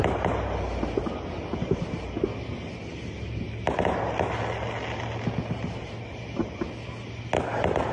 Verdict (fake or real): real